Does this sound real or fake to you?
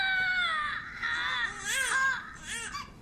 real